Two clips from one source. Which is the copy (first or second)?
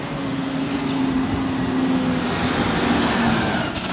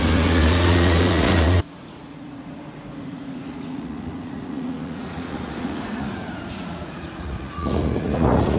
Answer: second